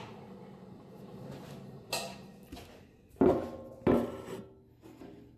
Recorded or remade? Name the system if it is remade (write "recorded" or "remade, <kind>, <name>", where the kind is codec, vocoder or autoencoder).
recorded